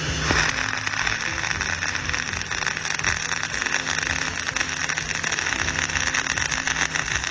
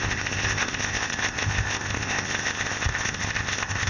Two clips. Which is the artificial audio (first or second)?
second